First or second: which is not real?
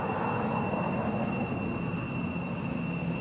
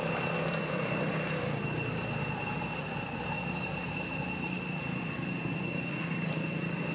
second